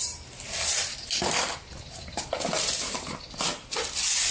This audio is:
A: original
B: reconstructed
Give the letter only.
B